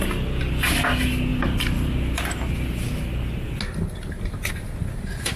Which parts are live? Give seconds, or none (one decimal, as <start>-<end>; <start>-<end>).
0.0-5.4